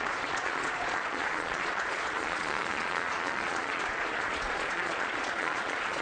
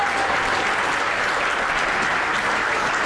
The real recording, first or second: second